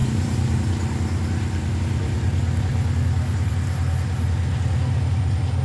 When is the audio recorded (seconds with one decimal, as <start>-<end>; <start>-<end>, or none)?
0.0-5.6